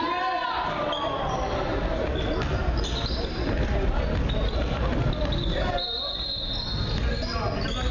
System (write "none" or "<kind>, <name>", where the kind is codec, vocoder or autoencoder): none